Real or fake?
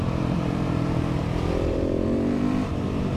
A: fake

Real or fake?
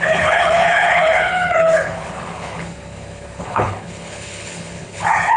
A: fake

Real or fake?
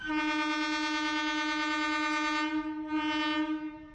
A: real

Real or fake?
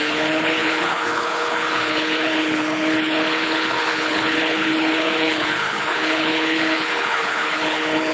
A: fake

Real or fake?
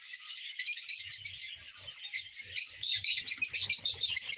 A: fake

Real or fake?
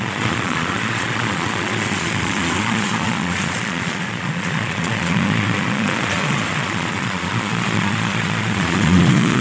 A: fake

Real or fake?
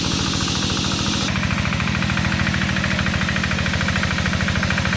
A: real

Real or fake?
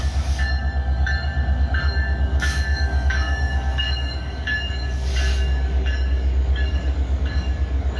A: fake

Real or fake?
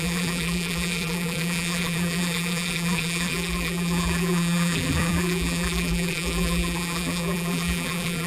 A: fake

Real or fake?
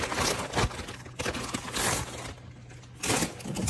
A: real